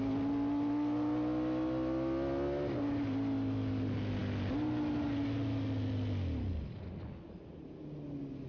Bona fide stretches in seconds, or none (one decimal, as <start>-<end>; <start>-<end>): 0.0-8.5